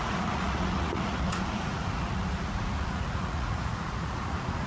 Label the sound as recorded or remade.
remade